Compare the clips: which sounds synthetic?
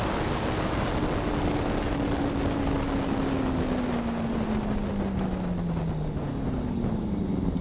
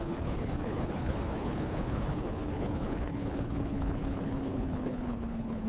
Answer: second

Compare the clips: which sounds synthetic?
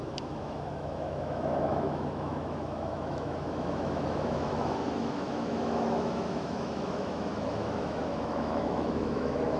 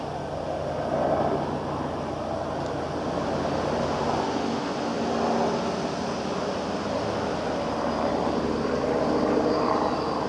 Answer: first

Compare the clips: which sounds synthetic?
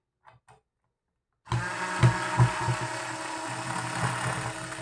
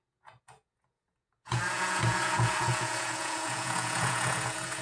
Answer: second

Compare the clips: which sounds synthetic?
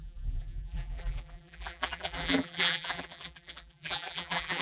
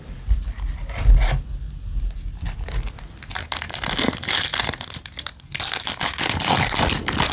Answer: first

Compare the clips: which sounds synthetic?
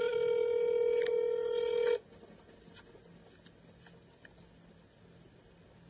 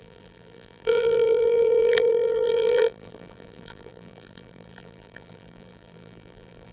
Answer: second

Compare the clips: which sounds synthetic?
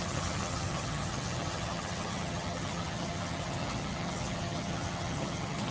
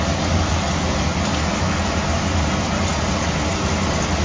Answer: first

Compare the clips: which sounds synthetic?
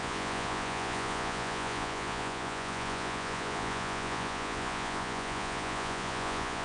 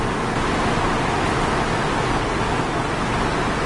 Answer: first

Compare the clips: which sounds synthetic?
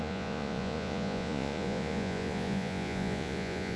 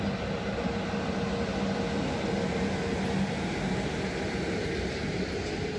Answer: first